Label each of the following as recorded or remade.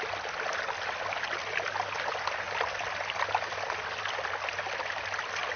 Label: recorded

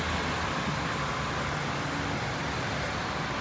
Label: recorded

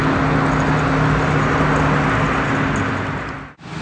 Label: recorded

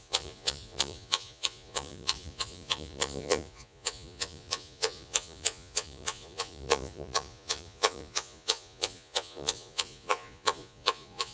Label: remade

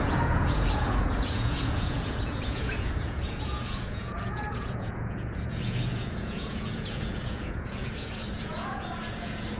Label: remade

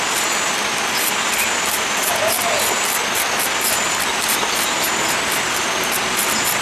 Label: recorded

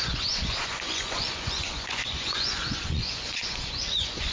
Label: remade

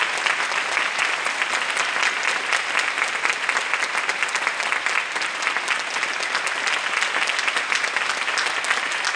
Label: recorded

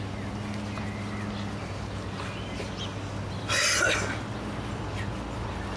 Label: recorded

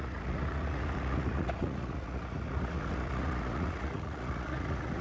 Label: remade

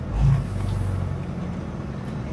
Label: recorded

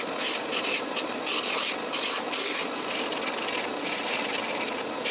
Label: recorded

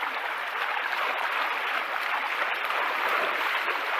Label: recorded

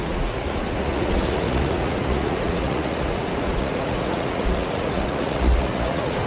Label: remade